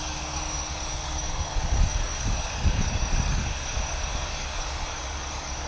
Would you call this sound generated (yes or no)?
yes